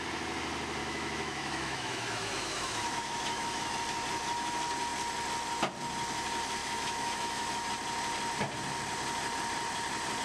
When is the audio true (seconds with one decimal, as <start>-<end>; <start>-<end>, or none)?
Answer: 0.0-0.8; 3.7-6.6; 7.7-10.2